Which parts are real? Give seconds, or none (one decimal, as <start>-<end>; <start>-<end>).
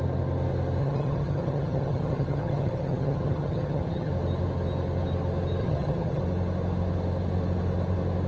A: 0.0-0.8; 4.1-5.6; 6.2-8.3